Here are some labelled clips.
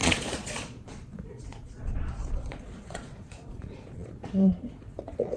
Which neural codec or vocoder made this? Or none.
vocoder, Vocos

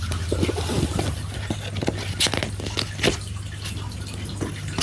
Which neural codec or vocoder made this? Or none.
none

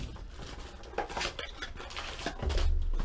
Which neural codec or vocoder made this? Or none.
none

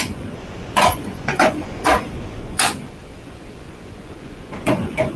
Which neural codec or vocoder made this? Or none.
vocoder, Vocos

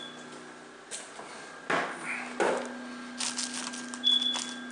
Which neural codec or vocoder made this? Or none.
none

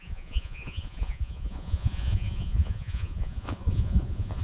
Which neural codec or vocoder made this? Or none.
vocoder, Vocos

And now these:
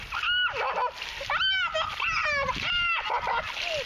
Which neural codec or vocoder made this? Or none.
none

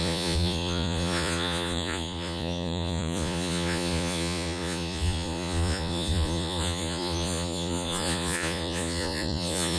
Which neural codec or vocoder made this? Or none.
vocoder, Vocos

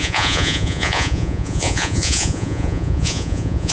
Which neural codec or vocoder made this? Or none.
vocoder, Vocos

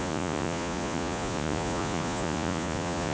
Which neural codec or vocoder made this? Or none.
vocoder, Vocos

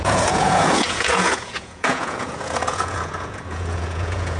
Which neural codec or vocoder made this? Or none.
vocoder, Vocos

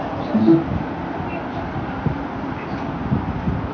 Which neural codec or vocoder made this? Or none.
none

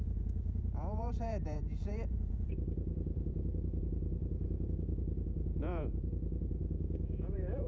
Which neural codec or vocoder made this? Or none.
vocoder, Vocos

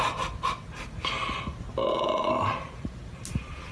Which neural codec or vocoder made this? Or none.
none